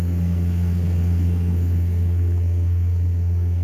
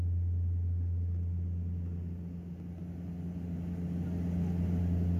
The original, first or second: second